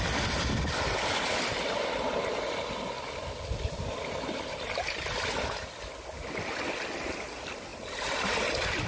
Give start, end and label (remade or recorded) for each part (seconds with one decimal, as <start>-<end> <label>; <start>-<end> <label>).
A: 0.0-8.9 recorded